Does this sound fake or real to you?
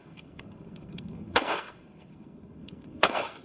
fake